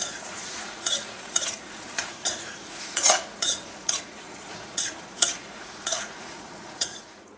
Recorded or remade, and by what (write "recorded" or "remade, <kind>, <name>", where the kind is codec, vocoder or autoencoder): remade, vocoder, Vocos